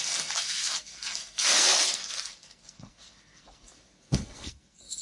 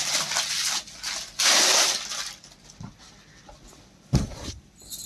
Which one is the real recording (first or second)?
second